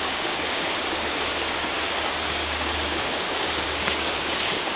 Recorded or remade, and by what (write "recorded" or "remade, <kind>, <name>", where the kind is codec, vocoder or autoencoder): remade, codec, DAC